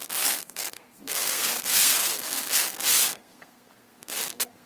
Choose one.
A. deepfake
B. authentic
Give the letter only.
A